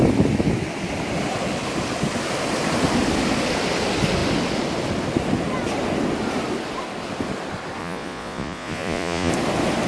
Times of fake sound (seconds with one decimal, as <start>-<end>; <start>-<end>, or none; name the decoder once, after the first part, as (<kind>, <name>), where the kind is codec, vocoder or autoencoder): 7.8-9.3 (vocoder, Vocos)